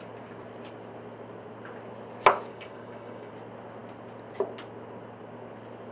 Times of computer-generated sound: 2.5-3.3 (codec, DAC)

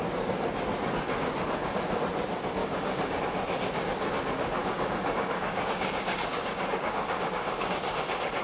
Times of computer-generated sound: 2.6-3.2 (codec, DAC); 4.6-7.8